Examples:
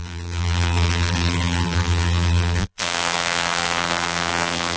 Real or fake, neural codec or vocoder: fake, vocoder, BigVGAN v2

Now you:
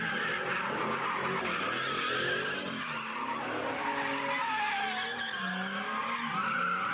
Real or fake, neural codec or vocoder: real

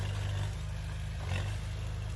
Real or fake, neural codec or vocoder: real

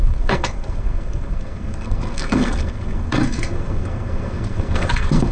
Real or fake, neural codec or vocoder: fake, codec, SNAC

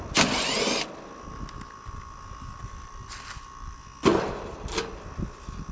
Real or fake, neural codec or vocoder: real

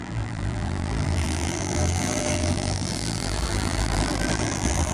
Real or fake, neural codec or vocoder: fake, vocoder, BigVGAN v2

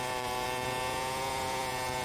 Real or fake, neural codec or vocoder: fake, vocoder, Vocos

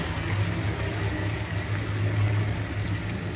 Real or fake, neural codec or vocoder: fake, codec, DAC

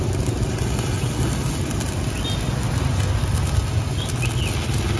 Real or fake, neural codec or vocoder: real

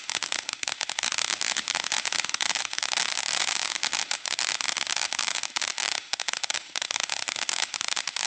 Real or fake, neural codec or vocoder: fake, autoencoder, DAC-VAE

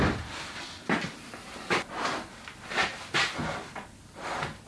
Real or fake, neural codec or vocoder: real